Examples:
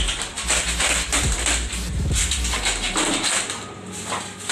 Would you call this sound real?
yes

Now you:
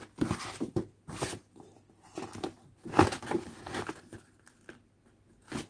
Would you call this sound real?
yes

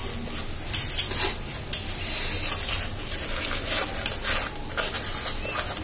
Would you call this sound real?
yes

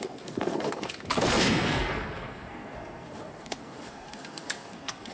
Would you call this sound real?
no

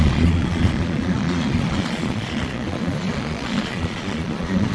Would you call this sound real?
no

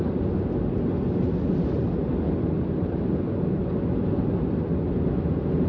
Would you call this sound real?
yes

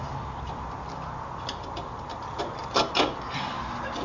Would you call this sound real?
yes